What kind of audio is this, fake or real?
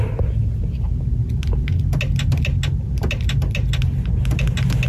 real